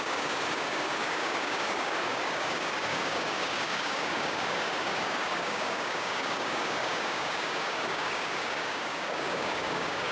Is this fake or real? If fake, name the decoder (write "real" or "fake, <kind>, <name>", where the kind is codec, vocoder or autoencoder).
fake, codec, DAC